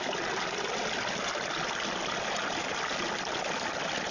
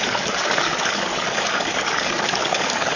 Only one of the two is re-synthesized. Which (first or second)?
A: second